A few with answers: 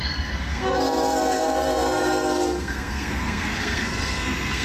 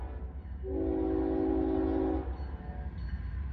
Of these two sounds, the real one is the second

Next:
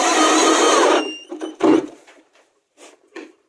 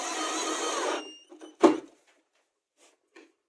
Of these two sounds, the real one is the second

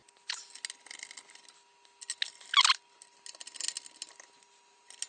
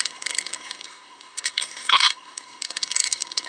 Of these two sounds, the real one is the first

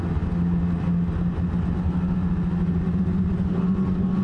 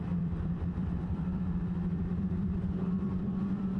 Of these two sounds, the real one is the first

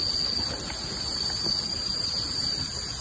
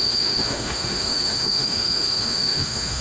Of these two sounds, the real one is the first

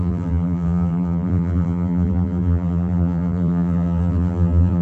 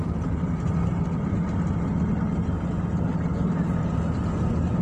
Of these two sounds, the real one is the second